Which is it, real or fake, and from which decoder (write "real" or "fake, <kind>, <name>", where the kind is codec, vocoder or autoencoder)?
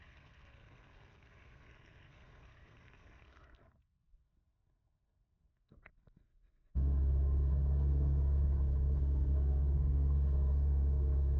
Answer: fake, codec, SNAC